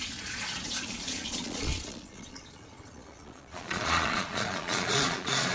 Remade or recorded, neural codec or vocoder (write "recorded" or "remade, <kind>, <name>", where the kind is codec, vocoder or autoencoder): remade, vocoder, Vocos